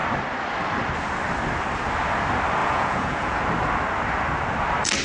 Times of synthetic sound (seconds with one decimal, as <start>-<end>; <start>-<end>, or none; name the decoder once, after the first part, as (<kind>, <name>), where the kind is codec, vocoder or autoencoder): 2.6-3.4 (vocoder, Vocos)